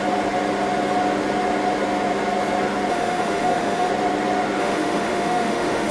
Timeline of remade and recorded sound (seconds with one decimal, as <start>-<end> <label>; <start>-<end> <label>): 0.0-2.9 recorded; 2.9-3.9 remade; 3.9-4.6 recorded; 4.6-5.9 remade